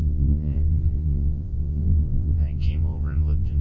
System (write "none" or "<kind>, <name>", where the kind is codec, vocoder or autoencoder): vocoder, Vocos